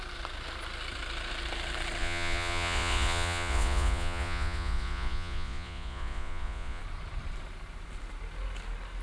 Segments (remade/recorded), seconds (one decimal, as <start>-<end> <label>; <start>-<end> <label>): 0.0-2.0 recorded; 2.0-6.8 remade; 6.8-9.0 recorded